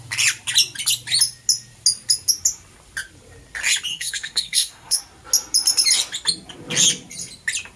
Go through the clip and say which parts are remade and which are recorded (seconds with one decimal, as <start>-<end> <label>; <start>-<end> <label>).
0.0-3.9 recorded; 3.9-5.0 remade; 5.0-7.8 recorded